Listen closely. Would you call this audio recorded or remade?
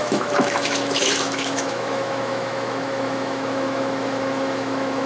remade